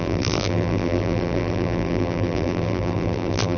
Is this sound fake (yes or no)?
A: yes